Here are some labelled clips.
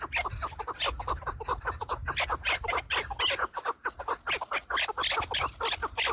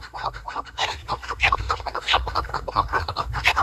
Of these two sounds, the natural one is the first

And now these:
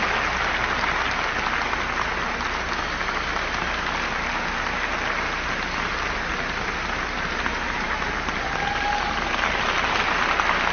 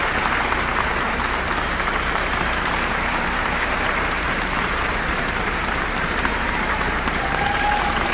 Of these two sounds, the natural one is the first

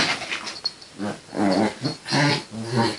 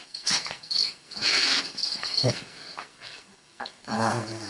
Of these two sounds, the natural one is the first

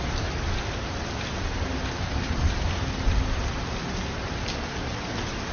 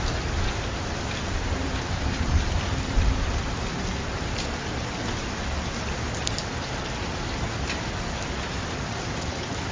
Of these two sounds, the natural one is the first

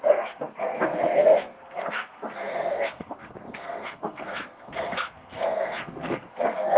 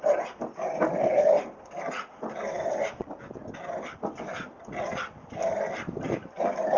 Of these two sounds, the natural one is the second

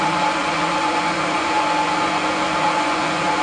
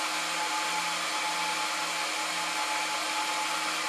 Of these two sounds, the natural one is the second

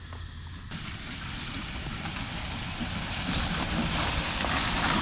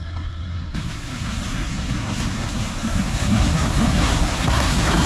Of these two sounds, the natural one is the first